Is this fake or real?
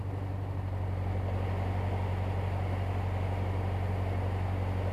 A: real